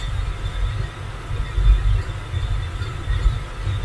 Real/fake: real